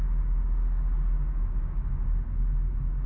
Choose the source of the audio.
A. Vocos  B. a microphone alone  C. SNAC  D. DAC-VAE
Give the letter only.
B